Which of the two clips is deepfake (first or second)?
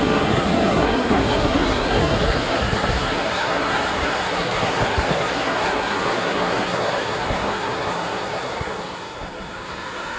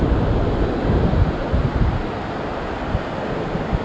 first